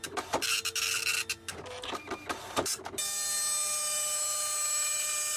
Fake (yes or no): no